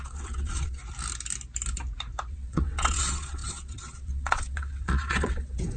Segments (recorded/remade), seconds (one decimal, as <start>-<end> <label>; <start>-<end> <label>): 0.0-0.8 remade; 0.8-2.3 recorded; 2.3-5.8 remade